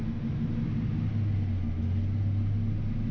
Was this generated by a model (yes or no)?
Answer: no